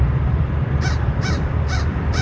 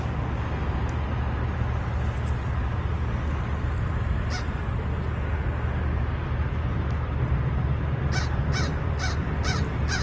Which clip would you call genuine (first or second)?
second